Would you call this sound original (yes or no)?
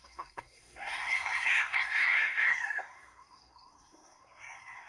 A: no